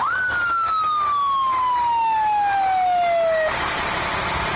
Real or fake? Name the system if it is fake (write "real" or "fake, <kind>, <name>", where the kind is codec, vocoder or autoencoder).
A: real